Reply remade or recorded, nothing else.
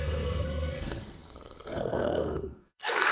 remade